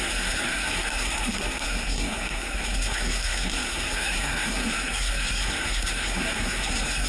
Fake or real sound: fake